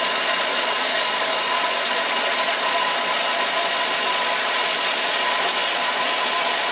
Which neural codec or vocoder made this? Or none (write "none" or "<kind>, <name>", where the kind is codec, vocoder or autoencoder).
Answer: vocoder, Vocos